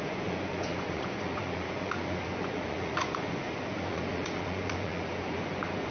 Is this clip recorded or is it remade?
remade